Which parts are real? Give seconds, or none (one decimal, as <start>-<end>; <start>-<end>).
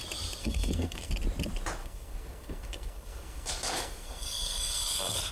0.0-0.4; 1.1-1.8